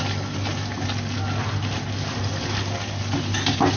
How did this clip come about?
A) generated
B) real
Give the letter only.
B